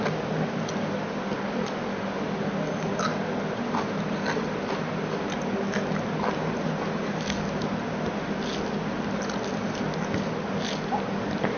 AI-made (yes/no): no